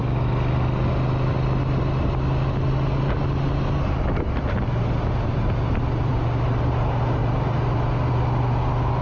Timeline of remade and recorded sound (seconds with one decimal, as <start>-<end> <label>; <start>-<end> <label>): 0.0-9.0 recorded